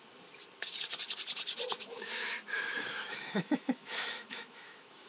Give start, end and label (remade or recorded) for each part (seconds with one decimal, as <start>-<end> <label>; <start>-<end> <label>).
0.0-1.8 recorded; 1.8-5.1 remade